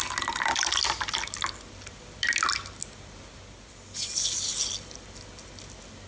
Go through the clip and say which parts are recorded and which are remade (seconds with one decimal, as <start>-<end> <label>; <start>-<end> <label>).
0.0-6.1 recorded